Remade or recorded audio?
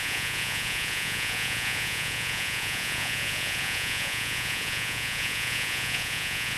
remade